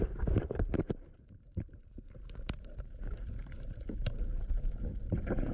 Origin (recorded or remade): remade